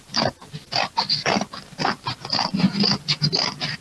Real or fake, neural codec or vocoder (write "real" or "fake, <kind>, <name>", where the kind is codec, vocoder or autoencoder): real